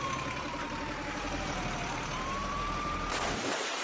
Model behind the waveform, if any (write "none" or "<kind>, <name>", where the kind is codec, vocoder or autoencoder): vocoder, BigVGAN v2